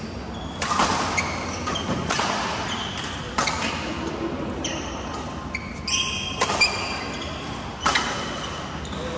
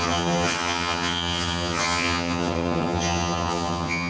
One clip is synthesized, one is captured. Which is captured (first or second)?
first